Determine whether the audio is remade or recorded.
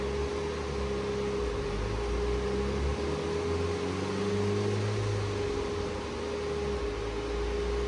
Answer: recorded